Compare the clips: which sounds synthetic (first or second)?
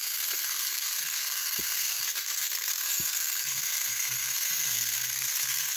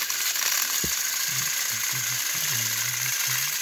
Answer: first